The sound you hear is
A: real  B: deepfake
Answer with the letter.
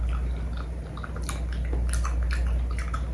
A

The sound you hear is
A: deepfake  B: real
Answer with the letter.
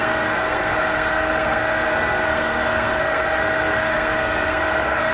A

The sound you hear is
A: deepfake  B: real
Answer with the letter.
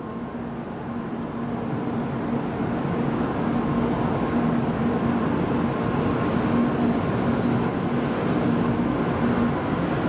B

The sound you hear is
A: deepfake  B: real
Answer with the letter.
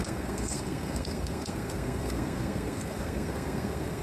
A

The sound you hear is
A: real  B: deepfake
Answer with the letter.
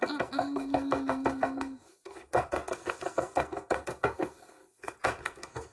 B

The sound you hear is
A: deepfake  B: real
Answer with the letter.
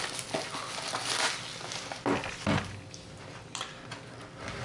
B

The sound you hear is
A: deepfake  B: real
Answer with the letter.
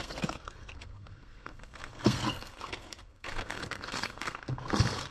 A